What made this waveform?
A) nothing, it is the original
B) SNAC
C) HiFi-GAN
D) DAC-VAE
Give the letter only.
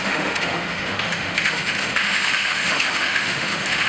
D